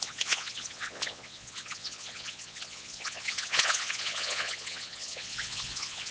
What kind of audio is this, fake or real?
fake